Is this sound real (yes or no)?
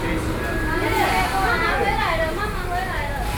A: yes